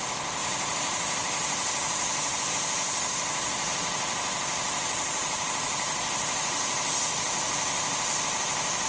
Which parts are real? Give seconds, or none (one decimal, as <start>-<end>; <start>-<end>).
0.0-8.9